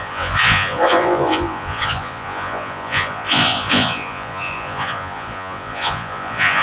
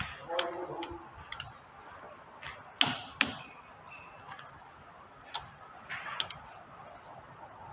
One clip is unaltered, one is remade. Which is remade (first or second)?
first